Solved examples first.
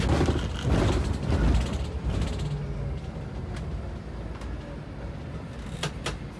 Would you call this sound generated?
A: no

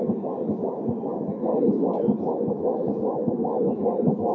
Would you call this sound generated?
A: no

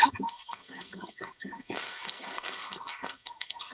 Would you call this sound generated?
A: yes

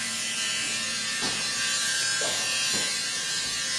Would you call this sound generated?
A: yes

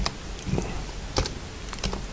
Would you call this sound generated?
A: no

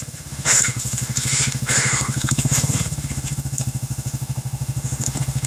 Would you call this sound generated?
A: yes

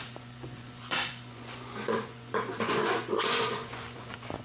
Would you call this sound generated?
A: yes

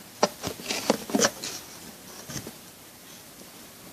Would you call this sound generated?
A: no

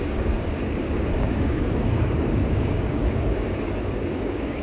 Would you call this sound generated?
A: yes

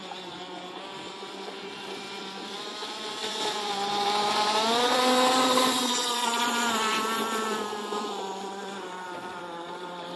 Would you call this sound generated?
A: yes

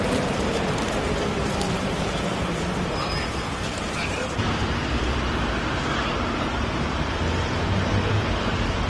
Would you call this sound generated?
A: yes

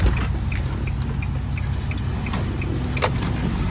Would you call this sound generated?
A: no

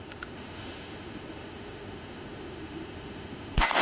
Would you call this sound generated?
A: yes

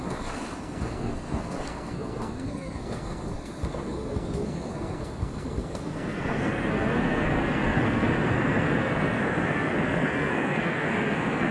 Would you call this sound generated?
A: yes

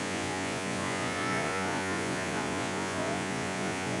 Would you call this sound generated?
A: yes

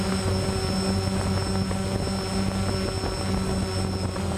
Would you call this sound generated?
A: no